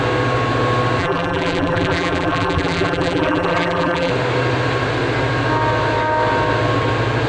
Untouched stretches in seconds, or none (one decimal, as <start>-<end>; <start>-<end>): 0.0-1.0; 4.1-7.3

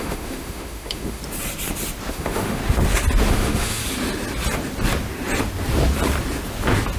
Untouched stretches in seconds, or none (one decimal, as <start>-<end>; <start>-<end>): 1.2-2.1; 2.6-3.3; 3.8-7.0

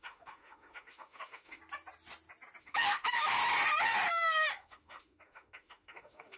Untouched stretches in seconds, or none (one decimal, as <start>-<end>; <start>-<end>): 1.6-2.6; 3.4-4.1

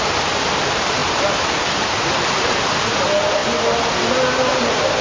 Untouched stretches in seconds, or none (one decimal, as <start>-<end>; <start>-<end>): 0.0-5.0

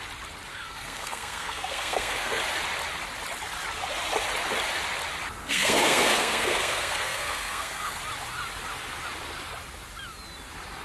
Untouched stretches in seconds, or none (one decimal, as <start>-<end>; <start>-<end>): 0.0-0.5; 2.4-5.4; 8.0-10.8

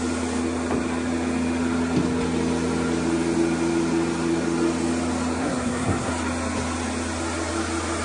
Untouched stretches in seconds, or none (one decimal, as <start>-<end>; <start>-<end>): 0.0-5.4; 6.1-8.0